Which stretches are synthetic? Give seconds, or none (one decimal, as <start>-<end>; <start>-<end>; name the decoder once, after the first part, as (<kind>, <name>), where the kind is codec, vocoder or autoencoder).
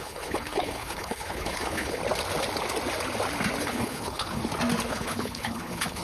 0.0-2.0 (codec, HILCodec); 3.6-4.4; 4.9-6.0